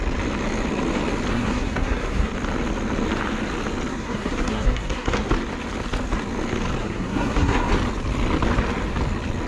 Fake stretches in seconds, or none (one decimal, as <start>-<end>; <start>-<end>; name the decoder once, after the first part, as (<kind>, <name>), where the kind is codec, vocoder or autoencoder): 1.3-2.3 (codec, SNAC); 3.9-5.3; 6.8-7.7